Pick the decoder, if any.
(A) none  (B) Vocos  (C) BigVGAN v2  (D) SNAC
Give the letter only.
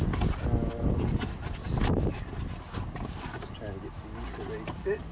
A